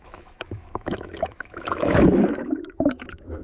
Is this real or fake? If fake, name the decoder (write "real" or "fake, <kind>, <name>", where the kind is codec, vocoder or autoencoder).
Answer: fake, autoencoder, DAC-VAE